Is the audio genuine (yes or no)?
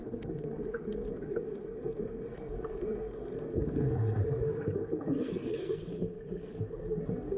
no